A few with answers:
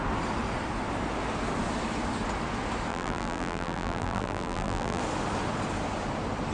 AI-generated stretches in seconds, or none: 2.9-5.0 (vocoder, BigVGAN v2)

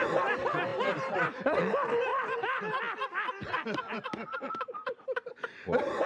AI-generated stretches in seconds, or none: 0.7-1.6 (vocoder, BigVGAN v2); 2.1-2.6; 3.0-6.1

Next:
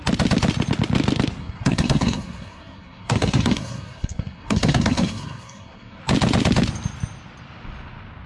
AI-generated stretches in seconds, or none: 1.4-6.0 (codec, SNAC)

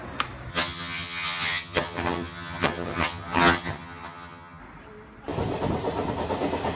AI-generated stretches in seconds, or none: 0.5-4.6 (vocoder, HiFi-GAN)